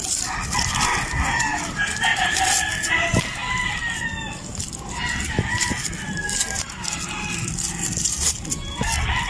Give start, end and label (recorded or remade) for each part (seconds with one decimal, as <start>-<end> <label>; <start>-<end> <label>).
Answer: 0.0-9.3 recorded